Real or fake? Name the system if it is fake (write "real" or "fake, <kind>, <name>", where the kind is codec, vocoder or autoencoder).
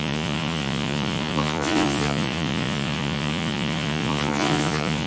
fake, vocoder, Vocos